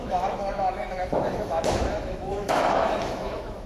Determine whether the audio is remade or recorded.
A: remade